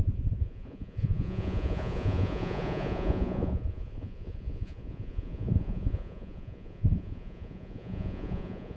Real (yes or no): no